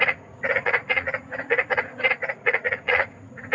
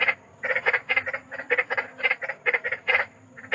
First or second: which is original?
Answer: second